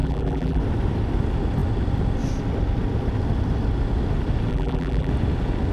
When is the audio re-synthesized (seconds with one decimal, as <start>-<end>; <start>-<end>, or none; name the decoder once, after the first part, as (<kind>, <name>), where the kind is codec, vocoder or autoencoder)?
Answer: 0.0-0.6 (vocoder, BigVGAN v2); 4.5-5.1